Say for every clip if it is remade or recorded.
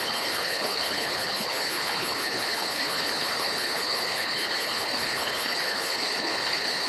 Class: remade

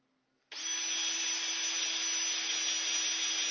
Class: recorded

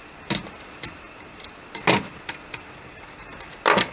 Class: recorded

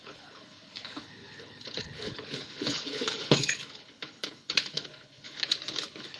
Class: remade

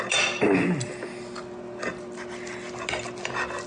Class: recorded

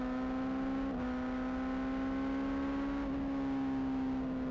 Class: recorded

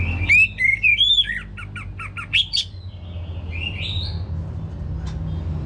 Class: recorded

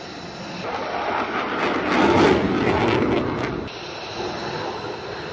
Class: recorded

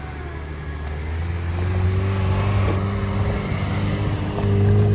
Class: recorded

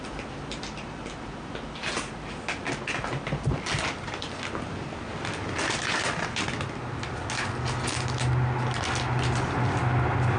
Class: recorded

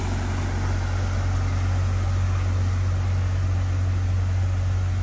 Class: recorded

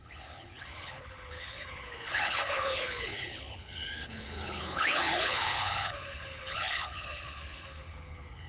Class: remade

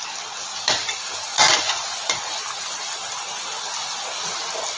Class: recorded